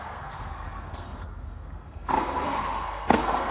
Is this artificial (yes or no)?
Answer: yes